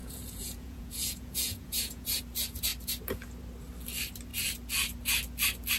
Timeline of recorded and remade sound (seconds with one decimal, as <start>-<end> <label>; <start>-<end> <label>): 0.0-2.2 remade; 2.2-5.8 recorded